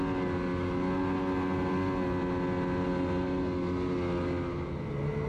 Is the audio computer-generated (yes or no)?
no